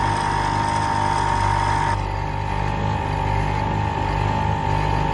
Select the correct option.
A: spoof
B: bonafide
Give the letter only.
B